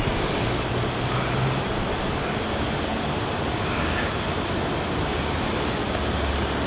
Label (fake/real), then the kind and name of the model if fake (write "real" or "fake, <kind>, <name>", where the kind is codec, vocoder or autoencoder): real